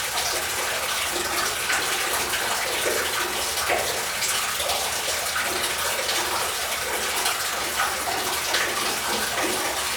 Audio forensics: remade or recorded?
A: recorded